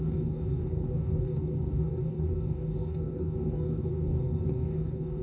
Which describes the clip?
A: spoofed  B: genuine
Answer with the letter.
A